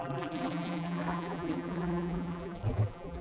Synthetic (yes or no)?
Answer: yes